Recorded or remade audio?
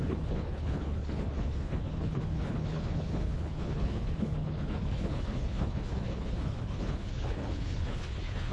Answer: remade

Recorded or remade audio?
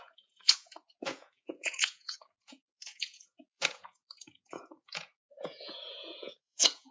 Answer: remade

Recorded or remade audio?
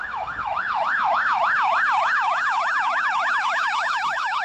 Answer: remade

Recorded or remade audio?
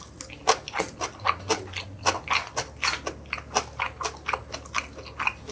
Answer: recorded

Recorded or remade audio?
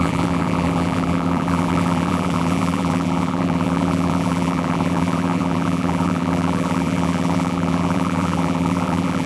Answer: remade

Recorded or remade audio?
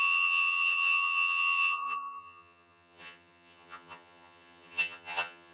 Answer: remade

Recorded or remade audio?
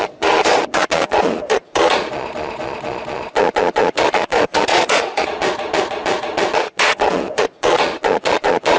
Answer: remade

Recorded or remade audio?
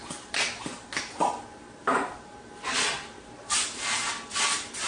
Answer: recorded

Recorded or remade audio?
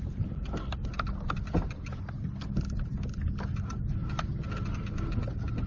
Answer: recorded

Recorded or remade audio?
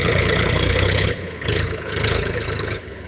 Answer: remade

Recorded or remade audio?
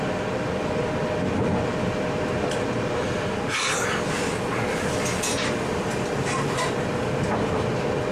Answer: recorded